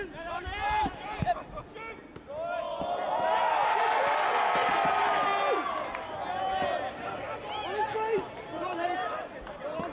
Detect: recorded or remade recorded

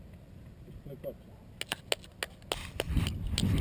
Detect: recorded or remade recorded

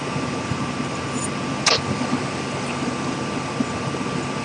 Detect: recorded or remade recorded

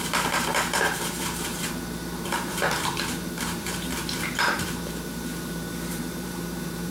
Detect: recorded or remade remade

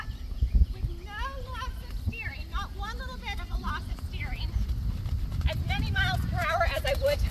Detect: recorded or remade recorded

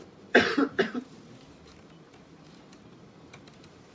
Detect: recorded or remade remade